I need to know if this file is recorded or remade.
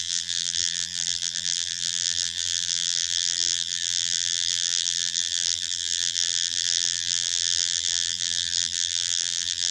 remade